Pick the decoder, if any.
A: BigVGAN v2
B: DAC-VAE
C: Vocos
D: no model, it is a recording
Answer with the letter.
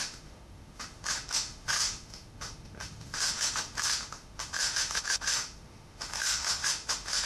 B